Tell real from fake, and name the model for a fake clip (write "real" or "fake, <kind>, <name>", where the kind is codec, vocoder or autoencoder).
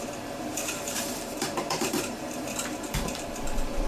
fake, vocoder, BigVGAN v2